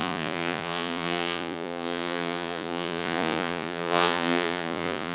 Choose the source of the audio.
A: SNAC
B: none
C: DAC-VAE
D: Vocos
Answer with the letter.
D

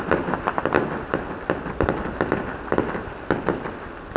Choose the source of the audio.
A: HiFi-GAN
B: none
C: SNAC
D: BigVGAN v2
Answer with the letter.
B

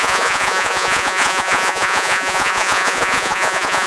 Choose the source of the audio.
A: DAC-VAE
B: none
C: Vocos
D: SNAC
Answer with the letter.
C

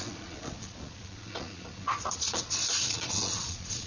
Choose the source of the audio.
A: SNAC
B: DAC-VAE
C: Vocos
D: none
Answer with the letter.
C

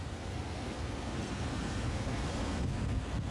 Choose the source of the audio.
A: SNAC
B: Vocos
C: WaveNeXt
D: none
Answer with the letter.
A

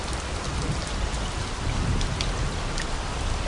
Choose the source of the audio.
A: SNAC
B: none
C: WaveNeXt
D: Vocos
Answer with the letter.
B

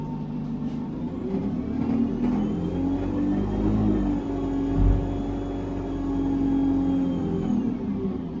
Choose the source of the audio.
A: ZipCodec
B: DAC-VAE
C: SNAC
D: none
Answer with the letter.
D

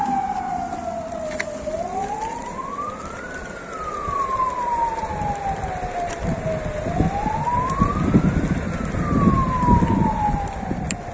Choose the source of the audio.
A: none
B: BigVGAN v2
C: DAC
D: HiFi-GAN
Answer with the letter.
A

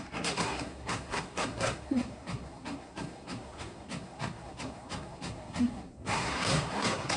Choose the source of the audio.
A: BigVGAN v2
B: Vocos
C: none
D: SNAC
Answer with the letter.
D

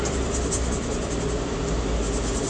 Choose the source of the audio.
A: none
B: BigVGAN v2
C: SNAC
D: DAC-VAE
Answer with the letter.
A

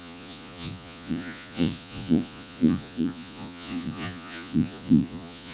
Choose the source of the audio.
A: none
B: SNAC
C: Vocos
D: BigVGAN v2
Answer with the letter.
C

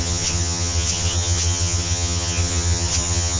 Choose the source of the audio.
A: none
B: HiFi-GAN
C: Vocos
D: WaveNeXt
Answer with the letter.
B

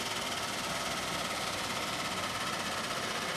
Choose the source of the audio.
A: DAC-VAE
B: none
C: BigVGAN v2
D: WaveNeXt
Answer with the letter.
C